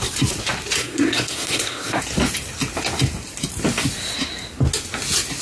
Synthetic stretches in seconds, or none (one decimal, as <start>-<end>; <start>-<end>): 0.8-2.0